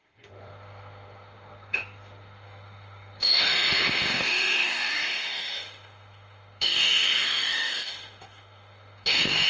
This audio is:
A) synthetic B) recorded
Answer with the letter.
A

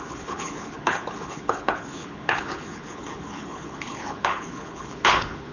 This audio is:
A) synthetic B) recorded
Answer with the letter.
A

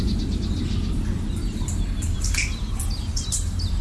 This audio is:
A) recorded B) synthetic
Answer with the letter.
A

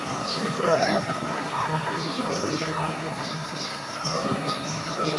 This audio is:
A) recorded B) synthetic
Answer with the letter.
B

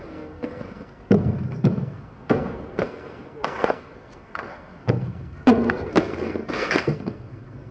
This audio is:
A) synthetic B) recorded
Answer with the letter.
A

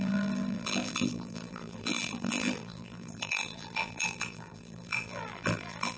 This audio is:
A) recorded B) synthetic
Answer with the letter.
B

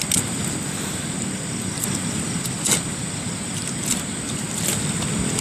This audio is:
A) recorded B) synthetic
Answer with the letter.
A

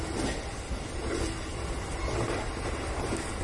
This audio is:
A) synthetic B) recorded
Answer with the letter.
B